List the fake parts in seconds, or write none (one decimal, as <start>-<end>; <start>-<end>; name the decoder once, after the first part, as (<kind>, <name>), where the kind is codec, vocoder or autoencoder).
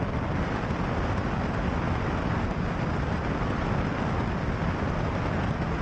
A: none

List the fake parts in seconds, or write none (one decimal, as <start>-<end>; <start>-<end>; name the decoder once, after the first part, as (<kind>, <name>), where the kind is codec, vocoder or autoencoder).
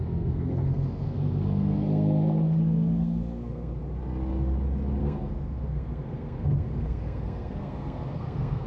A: 0.0-3.8 (codec, SNAC); 5.0-8.7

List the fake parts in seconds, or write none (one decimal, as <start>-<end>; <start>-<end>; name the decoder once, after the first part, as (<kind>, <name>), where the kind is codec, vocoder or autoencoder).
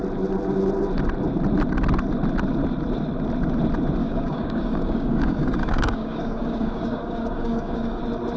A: 4.0-8.0 (codec, DAC)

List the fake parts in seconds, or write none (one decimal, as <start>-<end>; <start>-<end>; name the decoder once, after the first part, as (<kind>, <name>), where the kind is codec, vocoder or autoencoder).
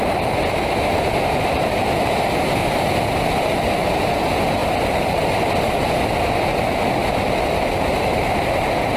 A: none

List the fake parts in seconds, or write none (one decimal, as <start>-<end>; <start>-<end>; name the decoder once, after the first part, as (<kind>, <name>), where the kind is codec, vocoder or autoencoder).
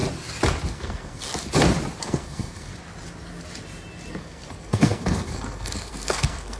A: 0.7-1.3 (codec, SNAC); 2.0-2.7; 4.1-6.6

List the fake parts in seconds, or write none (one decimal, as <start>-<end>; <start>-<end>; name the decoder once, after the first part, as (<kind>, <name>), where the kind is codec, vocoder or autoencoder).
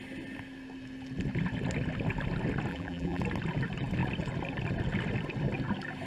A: 2.7-3.2 (vocoder, BigVGAN v2)